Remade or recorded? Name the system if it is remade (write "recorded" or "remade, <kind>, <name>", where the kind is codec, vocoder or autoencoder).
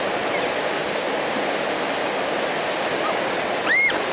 recorded